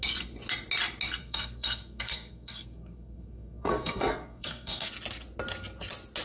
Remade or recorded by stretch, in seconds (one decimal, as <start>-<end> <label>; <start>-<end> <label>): 0.0-1.2 recorded; 1.2-4.9 remade; 4.9-6.2 recorded